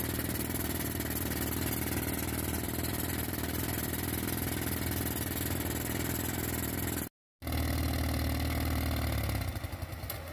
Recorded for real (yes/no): yes